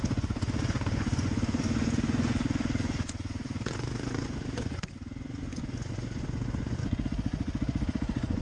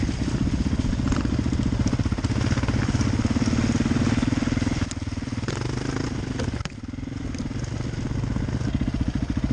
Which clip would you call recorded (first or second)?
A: second